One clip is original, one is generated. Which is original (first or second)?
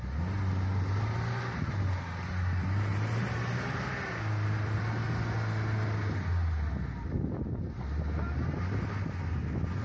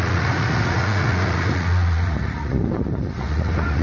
first